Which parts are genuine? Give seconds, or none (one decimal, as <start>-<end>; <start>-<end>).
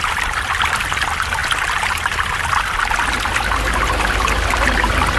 0.0-5.2